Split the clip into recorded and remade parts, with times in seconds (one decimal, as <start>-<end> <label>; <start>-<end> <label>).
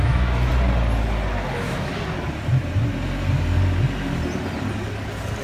0.0-0.5 remade; 0.5-1.5 recorded; 1.5-1.9 remade; 1.9-5.4 recorded